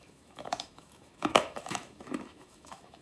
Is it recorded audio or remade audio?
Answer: remade